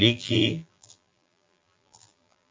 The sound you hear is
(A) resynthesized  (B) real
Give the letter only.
A